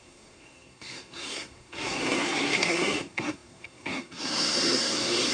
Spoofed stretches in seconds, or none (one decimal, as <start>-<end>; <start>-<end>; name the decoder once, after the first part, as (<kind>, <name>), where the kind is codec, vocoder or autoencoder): 0.0-5.3 (codec, SNAC)